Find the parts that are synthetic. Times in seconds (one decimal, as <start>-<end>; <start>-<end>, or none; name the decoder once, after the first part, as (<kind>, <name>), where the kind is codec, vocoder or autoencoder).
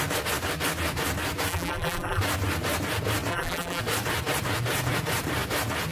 1.5-2.2 (vocoder, BigVGAN v2); 3.3-3.8